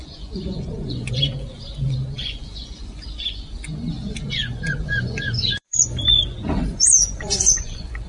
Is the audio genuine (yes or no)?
no